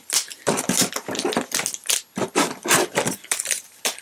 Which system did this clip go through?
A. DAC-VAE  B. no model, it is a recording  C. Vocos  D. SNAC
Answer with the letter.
B